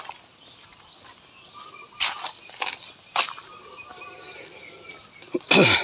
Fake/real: real